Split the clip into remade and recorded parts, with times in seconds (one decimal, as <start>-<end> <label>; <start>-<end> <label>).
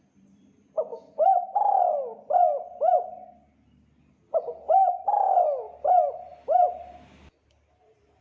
0.0-6.3 recorded; 6.3-6.9 remade; 6.9-8.2 recorded